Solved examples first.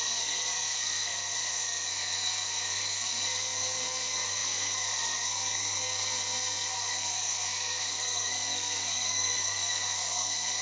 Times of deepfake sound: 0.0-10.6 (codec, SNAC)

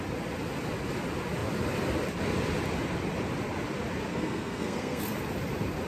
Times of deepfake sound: 4.1-5.0 (codec, SNAC)

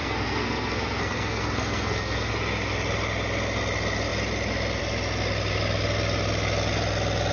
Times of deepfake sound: 0.0-2.3 (codec, SNAC)

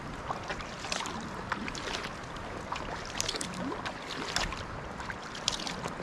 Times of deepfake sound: none

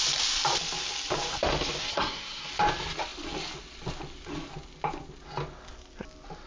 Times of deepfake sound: 1.9-2.5 (codec, SNAC)

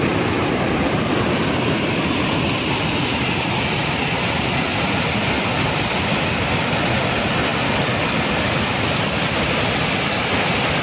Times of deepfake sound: none

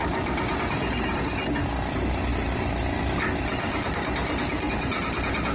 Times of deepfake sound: none